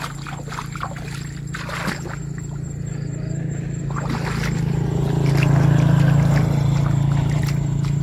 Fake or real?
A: real